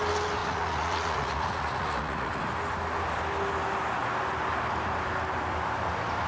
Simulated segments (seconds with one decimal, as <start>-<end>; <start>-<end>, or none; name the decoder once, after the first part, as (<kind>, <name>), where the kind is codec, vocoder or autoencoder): 0.4-2.4 (vocoder, Vocos)